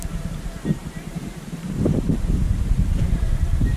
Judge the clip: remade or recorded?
remade